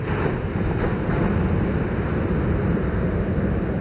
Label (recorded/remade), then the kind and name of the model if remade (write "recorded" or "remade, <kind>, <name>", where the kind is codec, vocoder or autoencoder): recorded